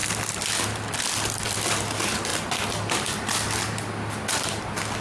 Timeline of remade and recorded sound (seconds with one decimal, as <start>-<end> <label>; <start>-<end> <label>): 0.0-5.0 recorded